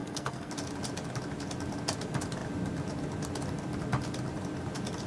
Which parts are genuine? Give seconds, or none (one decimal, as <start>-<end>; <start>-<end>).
0.5-5.1